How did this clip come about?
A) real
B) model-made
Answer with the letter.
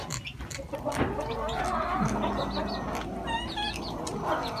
A